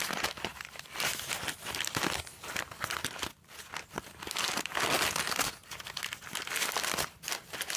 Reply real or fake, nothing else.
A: real